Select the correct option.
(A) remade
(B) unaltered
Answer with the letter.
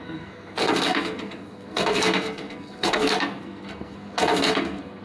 A